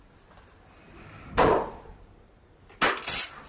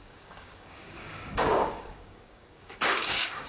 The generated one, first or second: second